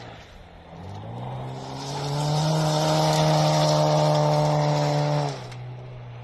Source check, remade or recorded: recorded